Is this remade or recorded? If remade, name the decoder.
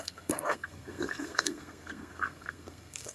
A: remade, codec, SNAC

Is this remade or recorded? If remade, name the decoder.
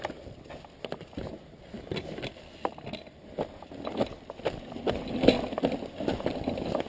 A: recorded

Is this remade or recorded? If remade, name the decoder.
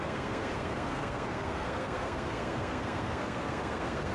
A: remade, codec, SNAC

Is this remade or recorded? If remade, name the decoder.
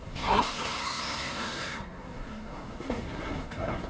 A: remade, codec, SNAC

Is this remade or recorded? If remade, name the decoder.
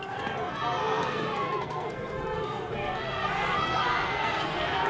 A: remade, codec, SNAC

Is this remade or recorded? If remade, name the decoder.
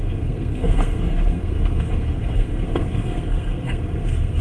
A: remade, codec, SNAC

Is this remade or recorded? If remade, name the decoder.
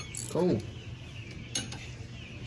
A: recorded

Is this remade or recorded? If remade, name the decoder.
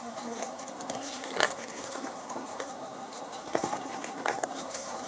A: remade, codec, SNAC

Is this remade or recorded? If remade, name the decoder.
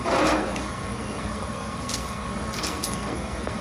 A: remade, codec, SNAC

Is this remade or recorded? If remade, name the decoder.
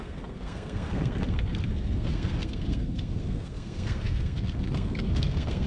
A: remade, codec, SNAC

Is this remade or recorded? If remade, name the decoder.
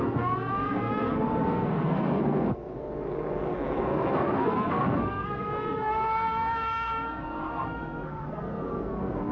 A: remade, codec, SNAC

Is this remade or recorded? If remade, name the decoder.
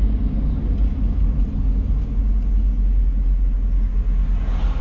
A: recorded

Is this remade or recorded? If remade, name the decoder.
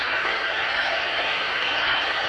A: remade, codec, SNAC